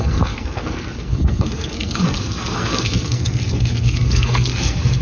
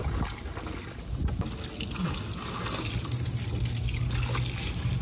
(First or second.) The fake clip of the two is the first